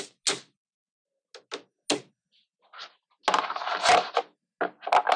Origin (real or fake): real